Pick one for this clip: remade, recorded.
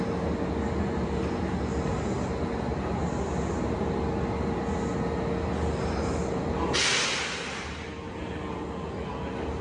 recorded